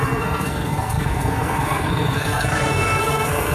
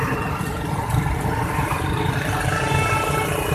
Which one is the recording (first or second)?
second